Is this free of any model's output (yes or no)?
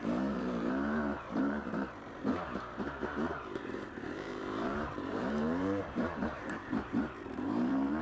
no